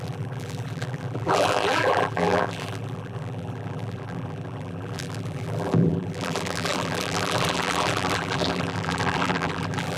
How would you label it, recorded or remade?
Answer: remade